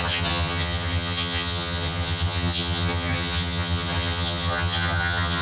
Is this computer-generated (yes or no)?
yes